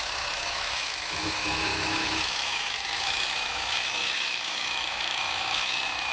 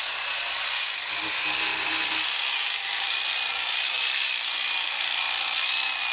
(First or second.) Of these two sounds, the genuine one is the second